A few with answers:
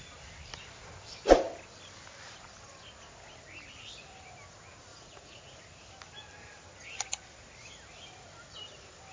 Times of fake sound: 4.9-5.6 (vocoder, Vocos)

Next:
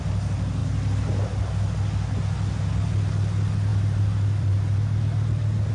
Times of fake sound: 3.7-4.8 (vocoder, BigVGAN v2)